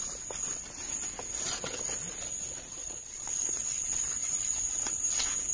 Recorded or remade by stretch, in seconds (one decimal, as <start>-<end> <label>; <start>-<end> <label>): 0.0-2.8 recorded; 2.8-4.4 remade; 4.4-5.5 recorded